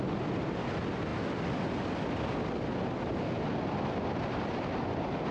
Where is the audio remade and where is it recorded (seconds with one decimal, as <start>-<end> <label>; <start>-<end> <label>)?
0.0-5.3 recorded